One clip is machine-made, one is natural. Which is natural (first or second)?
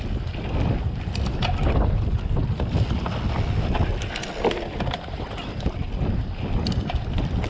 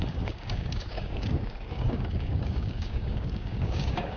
first